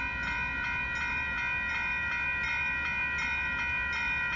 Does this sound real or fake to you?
real